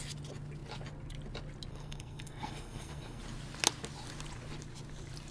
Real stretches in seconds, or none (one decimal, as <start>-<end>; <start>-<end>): 0.0-1.7; 3.2-5.3